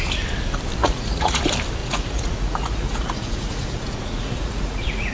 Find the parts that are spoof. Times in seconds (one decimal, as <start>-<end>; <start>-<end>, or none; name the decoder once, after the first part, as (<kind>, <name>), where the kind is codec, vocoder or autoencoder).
0.8-1.4 (vocoder, Vocos); 1.8-5.1